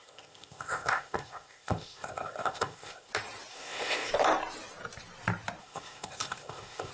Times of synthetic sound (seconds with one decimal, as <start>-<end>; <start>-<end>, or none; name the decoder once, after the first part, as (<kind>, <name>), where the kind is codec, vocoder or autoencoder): 0.0-3.1 (codec, ZipCodec); 3.5-4.1; 5.6-6.9